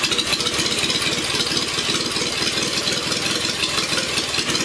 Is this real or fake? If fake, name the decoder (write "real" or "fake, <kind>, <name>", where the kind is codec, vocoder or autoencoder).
real